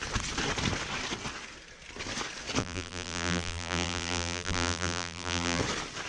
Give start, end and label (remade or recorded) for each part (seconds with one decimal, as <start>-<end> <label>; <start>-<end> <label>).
0.0-2.6 recorded; 2.6-5.6 remade; 5.6-6.1 recorded